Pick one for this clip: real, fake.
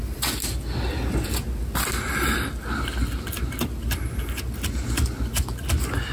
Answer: real